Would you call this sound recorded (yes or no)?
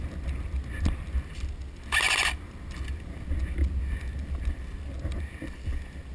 yes